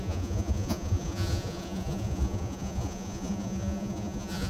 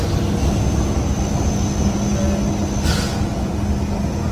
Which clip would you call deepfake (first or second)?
first